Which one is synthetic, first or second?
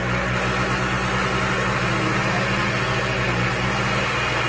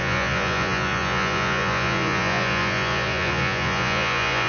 second